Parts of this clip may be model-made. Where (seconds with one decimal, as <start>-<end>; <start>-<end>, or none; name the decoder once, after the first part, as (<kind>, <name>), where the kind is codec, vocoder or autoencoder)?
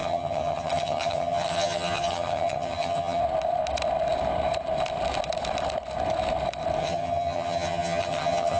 0.0-3.2 (vocoder, HiFi-GAN); 6.8-8.6